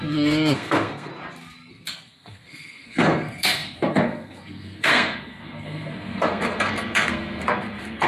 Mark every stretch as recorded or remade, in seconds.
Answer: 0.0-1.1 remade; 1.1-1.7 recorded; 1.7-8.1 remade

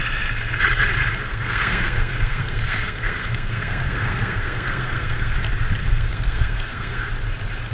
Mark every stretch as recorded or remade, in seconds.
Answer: 0.0-1.3 recorded; 1.3-5.3 remade; 5.3-5.8 recorded; 5.8-7.1 remade; 7.1-7.7 recorded

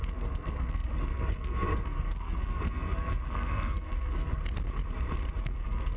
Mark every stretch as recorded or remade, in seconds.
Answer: 0.0-4.4 remade; 4.4-5.4 recorded; 5.4-6.0 remade

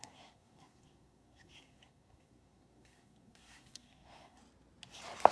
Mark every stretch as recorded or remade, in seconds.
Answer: 0.0-4.4 remade; 4.4-5.3 recorded

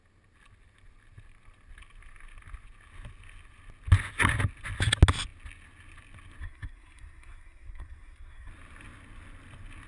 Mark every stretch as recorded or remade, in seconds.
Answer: 0.0-6.4 recorded; 6.4-8.5 remade; 8.5-9.9 recorded

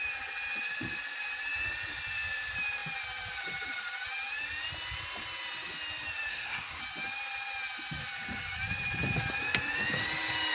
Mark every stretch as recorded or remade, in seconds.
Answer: 0.0-6.3 recorded; 6.3-6.8 remade; 6.8-10.5 recorded